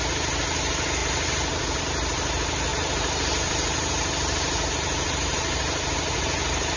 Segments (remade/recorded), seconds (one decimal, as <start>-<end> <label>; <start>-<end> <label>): 0.0-1.0 recorded; 1.0-1.8 remade; 1.8-2.7 recorded; 2.7-6.8 remade